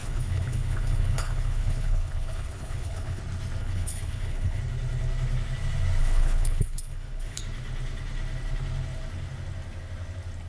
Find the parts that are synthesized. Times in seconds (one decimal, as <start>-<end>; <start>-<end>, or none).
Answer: 0.0-3.2; 3.6-4.6; 6.0-7.4

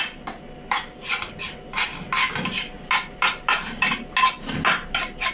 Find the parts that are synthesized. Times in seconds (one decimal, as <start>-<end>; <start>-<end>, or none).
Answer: none

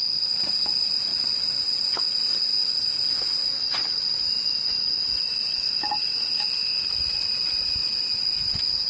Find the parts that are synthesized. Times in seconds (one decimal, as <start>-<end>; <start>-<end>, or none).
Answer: none

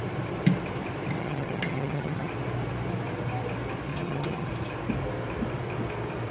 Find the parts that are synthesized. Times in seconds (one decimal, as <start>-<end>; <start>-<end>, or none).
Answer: 1.2-2.3; 3.9-4.5

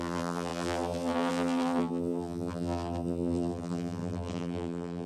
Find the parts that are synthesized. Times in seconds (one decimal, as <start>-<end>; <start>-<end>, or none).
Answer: 0.0-5.1

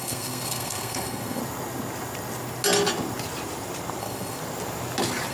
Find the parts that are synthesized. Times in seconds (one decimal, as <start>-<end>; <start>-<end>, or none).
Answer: 0.0-1.4; 4.0-4.4

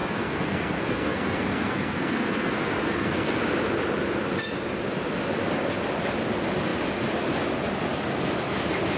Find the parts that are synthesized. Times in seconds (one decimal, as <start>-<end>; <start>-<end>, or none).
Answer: 0.0-3.4

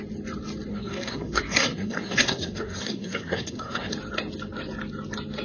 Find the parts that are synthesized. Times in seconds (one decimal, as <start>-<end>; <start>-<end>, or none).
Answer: 0.7-3.9